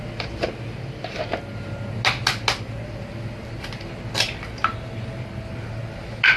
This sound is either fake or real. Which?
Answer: real